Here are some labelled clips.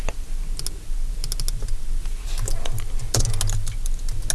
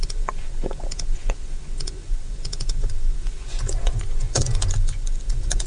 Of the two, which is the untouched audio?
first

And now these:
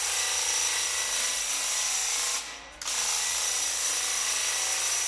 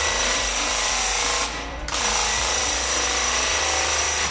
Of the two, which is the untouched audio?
first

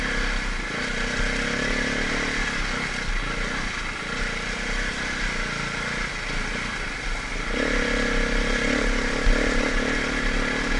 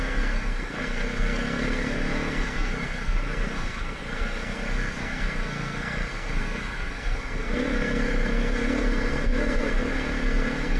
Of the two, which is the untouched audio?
first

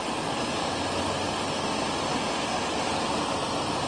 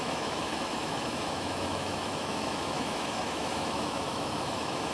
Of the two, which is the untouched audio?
first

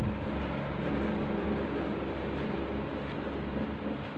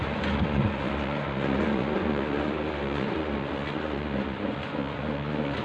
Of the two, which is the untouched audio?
first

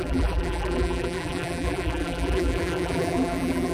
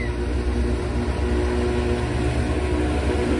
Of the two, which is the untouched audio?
second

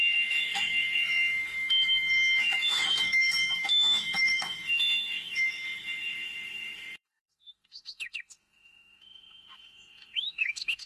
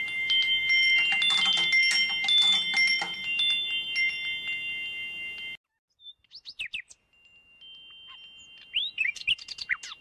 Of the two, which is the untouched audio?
second